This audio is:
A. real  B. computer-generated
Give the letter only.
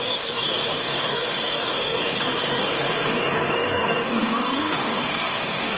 B